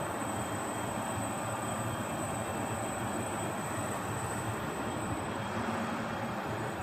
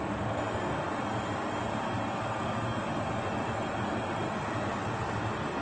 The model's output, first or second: first